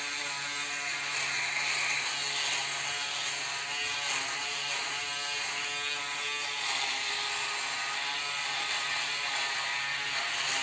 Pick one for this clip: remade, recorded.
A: recorded